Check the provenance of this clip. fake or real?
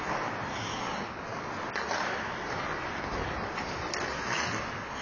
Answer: real